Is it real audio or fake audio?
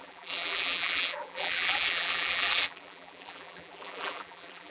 fake